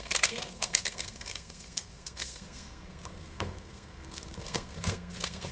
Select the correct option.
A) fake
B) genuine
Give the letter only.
A